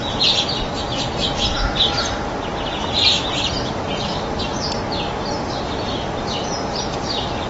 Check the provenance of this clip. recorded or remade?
recorded